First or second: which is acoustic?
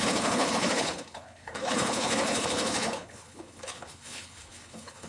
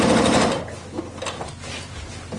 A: second